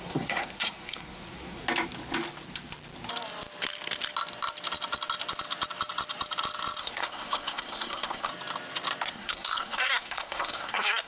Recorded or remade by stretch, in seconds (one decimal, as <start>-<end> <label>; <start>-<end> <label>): 0.0-1.6 remade; 1.6-6.8 recorded; 6.8-8.3 remade; 8.3-9.1 recorded; 9.1-11.1 remade